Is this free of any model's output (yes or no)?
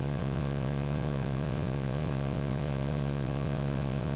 no